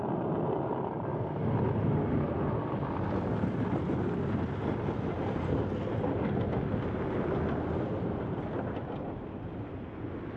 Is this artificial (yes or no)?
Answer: no